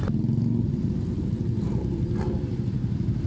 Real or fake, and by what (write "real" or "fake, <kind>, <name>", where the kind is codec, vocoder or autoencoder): real